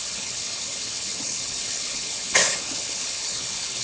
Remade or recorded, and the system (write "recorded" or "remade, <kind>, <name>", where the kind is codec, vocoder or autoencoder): remade, codec, HILCodec